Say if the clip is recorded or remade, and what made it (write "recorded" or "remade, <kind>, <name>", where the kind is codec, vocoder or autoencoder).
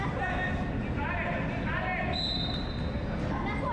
recorded